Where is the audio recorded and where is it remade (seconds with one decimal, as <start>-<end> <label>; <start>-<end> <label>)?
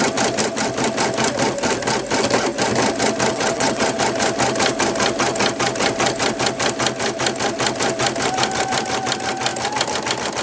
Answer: 0.0-3.3 recorded; 3.3-3.8 remade; 3.8-10.4 recorded